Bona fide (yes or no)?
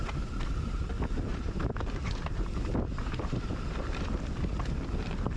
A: no